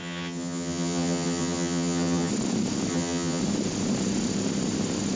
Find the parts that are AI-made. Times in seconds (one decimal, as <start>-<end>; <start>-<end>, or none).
0.0-2.3; 2.9-3.4